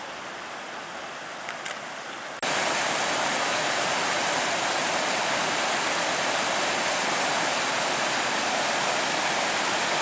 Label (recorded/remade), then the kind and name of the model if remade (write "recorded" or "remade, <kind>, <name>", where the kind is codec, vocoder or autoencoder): recorded